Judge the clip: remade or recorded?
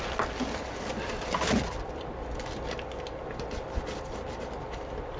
recorded